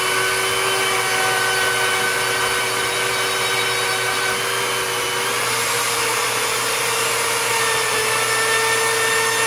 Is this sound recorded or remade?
recorded